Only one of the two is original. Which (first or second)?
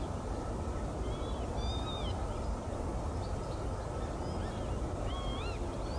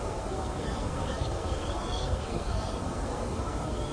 first